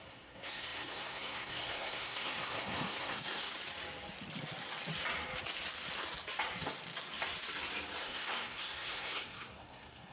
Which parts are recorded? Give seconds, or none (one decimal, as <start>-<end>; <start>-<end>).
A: 3.5-8.0